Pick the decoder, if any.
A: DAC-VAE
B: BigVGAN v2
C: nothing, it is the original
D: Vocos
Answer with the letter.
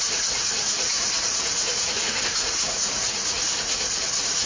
D